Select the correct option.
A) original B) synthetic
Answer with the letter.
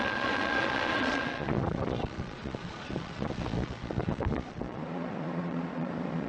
B